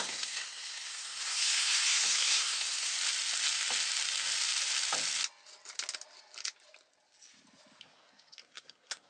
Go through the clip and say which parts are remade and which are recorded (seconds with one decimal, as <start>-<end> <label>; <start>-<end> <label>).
0.0-2.9 remade; 2.9-7.8 recorded; 7.8-9.1 remade